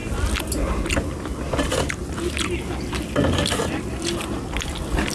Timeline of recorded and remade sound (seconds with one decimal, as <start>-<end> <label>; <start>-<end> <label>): 0.0-5.1 recorded